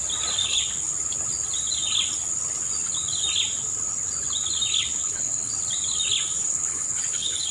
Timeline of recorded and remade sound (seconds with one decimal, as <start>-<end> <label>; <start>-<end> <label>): 0.0-0.4 recorded; 0.4-0.9 remade; 0.9-4.8 recorded; 4.8-5.5 remade; 5.5-6.4 recorded; 6.4-7.5 remade